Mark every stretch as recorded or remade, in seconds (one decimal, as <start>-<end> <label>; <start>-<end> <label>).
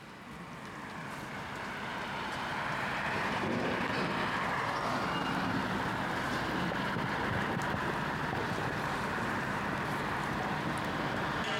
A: 0.0-5.2 recorded; 5.2-8.7 remade; 8.7-11.6 recorded